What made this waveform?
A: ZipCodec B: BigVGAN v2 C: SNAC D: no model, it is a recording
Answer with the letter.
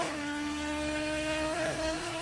C